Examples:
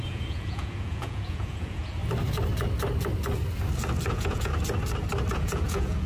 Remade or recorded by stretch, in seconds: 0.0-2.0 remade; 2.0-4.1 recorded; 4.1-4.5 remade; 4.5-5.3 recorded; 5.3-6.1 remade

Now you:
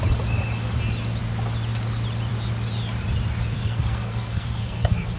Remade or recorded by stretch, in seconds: 0.0-3.5 recorded; 3.5-5.2 remade

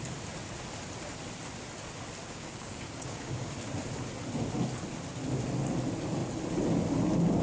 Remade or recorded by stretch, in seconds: 0.0-2.2 recorded; 2.2-3.5 remade; 3.5-7.4 recorded

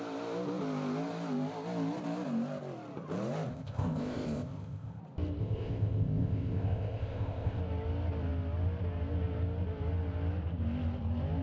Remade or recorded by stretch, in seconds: 0.0-3.5 recorded; 3.5-5.0 remade; 5.0-5.4 recorded; 5.4-7.6 remade; 7.6-11.4 recorded

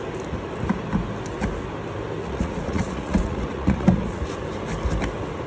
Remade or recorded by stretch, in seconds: 0.0-2.2 recorded; 2.2-4.2 remade; 4.2-5.5 recorded

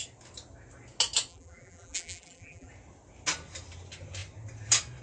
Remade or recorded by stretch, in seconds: 0.0-1.3 recorded; 1.3-2.7 remade; 2.7-5.0 recorded

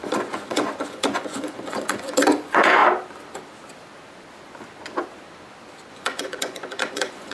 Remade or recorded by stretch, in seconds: 0.0-2.8 remade; 2.8-5.9 recorded; 5.9-7.3 remade